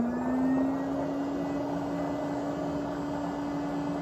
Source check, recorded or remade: recorded